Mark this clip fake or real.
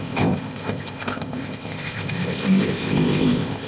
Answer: fake